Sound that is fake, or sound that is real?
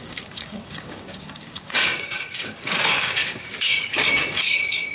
fake